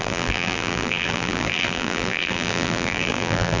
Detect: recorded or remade remade